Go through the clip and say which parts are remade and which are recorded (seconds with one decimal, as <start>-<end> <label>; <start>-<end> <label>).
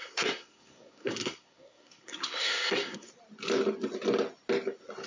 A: 0.0-3.1 remade; 3.1-5.1 recorded